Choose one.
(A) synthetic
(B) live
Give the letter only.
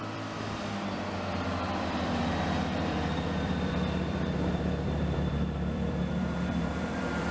A